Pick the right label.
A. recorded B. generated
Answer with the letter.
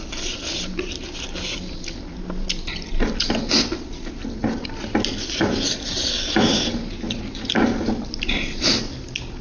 A